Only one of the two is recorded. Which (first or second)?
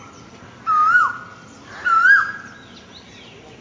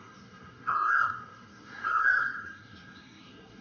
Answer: first